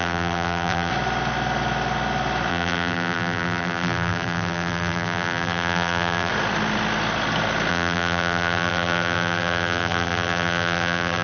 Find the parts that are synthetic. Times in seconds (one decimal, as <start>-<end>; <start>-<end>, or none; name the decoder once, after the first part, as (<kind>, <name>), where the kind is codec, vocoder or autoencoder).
0.0-0.9 (vocoder, BigVGAN v2); 2.5-6.3; 7.7-11.2